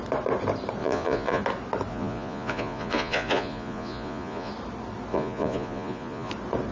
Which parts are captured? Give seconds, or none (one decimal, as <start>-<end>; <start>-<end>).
0.0-0.8; 1.4-1.9; 4.5-5.1; 6.3-6.7